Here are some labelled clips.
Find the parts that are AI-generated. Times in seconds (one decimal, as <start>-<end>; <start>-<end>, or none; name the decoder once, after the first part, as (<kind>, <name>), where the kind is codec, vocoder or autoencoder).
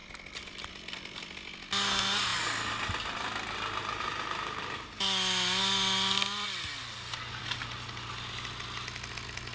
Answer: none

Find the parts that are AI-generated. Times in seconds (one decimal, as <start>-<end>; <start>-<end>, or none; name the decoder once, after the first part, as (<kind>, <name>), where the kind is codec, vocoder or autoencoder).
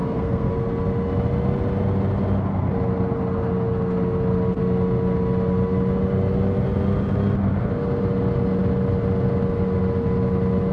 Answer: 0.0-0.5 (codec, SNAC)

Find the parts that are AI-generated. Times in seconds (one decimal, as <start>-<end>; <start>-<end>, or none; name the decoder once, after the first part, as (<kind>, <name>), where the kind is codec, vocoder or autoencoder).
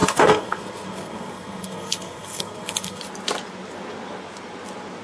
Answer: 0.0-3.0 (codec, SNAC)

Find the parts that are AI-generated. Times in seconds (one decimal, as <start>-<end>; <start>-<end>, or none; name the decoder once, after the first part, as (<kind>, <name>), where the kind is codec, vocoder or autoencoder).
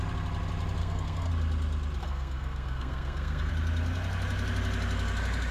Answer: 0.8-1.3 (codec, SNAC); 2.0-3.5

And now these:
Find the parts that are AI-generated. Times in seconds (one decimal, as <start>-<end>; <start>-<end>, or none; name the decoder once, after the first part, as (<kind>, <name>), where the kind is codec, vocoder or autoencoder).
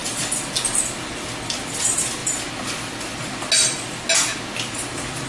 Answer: none